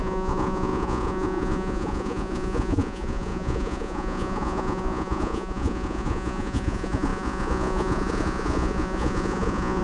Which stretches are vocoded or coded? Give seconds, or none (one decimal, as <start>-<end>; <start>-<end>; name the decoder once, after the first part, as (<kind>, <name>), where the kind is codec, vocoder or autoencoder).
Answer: 0.0-9.8 (vocoder, Vocos)